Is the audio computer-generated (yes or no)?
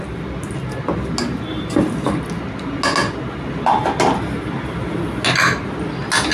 no